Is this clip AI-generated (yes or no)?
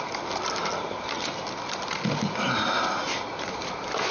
no